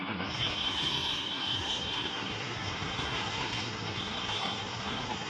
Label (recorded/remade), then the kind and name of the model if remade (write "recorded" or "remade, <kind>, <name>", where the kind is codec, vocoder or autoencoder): remade, codec, SNAC